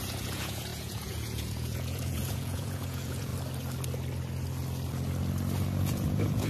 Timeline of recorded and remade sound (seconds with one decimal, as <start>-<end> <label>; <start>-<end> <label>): 0.0-3.3 remade; 3.3-5.8 recorded; 5.8-6.5 remade